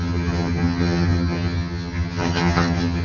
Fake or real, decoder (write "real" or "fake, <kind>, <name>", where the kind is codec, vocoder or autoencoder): fake, vocoder, HiFi-GAN